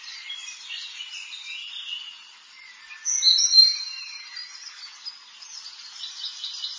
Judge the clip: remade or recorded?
recorded